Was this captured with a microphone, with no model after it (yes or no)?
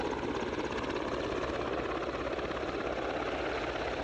yes